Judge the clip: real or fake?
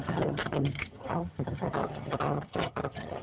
fake